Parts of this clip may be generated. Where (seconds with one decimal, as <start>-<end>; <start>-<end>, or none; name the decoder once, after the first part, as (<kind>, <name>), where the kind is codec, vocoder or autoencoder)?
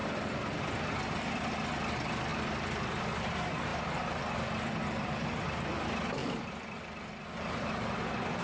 0.0-0.6 (vocoder, BigVGAN v2); 2.3-3.3; 6.2-8.4